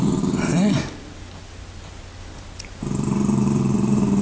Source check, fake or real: real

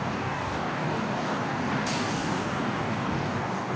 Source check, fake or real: fake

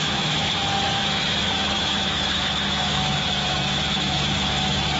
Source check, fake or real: fake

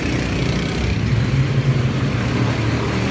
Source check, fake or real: real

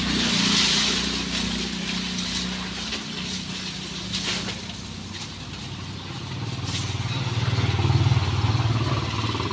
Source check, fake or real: real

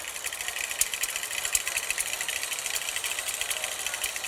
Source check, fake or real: real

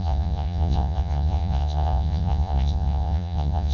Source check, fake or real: fake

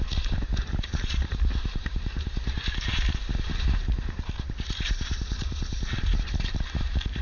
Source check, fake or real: fake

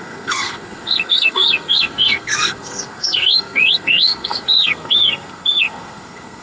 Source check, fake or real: fake